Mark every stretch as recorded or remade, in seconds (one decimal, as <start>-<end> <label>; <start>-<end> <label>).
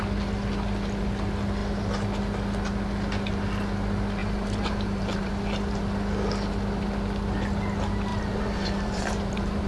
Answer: 0.0-4.2 recorded; 4.2-5.3 remade; 5.3-8.1 recorded; 8.1-9.7 remade